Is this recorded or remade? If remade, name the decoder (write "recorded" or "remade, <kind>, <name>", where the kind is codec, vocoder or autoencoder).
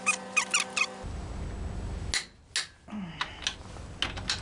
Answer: recorded